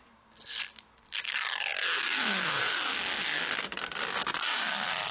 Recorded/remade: recorded